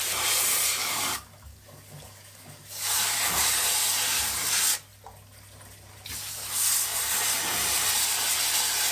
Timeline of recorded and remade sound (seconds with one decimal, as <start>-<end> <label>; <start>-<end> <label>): 0.0-0.8 recorded; 0.8-3.6 remade; 3.6-8.9 recorded